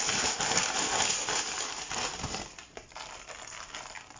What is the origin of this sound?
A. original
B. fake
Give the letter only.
A